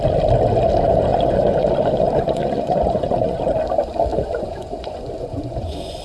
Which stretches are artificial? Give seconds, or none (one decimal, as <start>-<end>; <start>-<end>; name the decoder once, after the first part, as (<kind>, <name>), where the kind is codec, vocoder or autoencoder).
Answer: 1.1-3.4 (vocoder, Vocos); 4.1-6.0